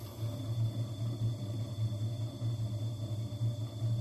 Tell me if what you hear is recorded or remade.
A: recorded